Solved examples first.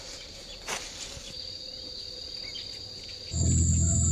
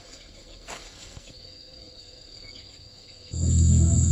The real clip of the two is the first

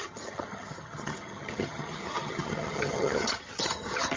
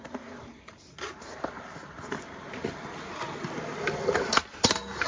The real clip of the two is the second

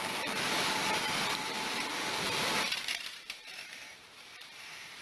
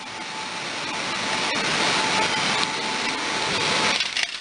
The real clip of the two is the second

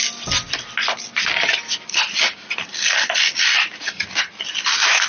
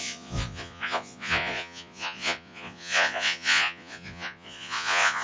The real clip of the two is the first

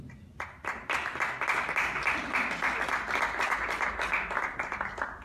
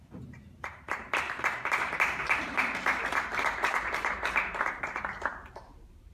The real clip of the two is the first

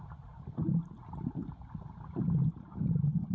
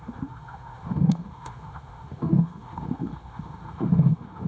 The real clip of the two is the first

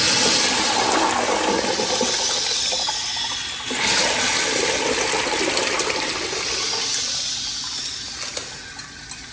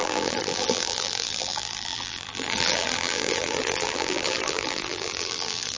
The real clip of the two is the first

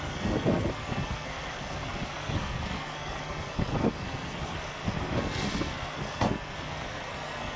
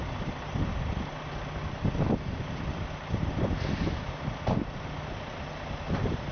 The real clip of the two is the second